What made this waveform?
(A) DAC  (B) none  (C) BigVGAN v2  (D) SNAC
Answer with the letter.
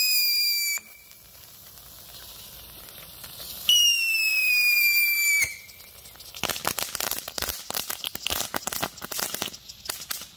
B